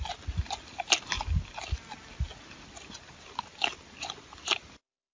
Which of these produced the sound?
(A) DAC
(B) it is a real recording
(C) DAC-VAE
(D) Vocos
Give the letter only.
B